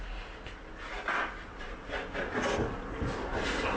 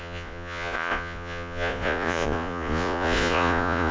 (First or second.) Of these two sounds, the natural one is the first